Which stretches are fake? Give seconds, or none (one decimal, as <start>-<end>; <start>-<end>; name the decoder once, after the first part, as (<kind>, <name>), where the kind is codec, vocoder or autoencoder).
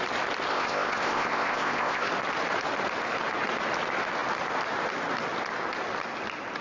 0.5-2.1 (codec, ZipCodec)